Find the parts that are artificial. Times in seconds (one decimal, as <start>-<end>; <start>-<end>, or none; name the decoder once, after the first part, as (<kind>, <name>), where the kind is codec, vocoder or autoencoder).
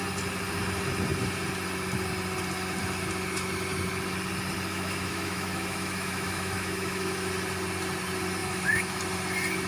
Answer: 4.7-7.3 (autoencoder, DAC-VAE); 8.4-9.0